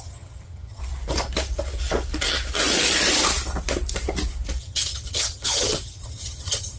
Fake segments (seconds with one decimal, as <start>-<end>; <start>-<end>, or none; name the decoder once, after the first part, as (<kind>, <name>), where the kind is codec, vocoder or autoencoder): 0.0-0.8 (vocoder, HiFi-GAN); 4.6-6.8